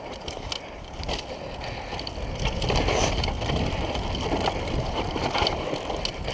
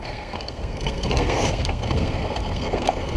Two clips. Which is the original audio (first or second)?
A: first